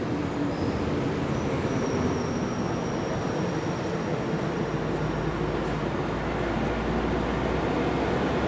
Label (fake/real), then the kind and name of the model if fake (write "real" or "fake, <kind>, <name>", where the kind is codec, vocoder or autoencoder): real